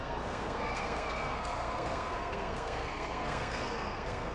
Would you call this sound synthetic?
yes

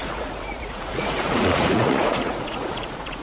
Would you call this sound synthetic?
yes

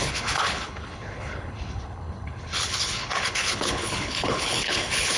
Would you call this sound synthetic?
yes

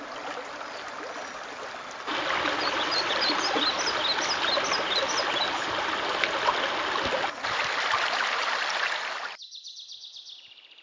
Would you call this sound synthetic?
no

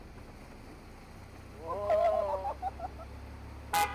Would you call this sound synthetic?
no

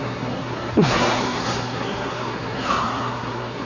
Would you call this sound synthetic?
yes